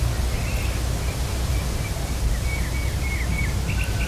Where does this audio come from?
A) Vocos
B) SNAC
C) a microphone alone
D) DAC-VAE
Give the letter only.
C